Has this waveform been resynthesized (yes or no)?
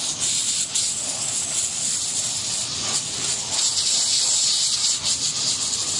no